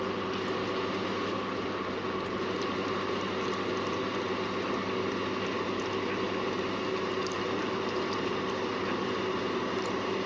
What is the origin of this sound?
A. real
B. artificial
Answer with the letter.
A